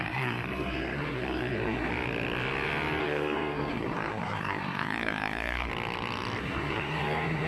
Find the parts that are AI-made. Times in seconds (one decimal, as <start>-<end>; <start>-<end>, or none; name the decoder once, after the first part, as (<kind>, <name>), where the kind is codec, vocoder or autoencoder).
0.0-1.9 (codec, SNAC); 3.0-5.7; 6.4-7.5